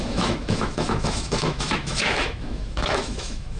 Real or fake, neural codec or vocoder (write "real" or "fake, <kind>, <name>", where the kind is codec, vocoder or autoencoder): fake, autoencoder, DAC-VAE